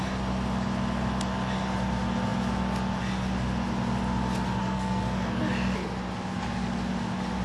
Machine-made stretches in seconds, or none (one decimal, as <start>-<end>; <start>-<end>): 4.6-5.4